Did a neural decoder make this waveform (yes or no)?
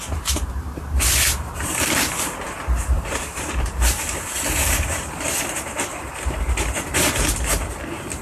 yes